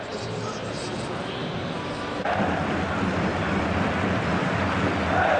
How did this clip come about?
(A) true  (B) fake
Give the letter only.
A